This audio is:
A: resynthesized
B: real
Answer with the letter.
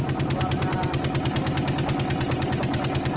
B